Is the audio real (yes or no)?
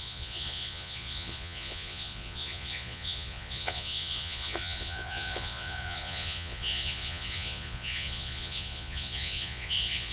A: no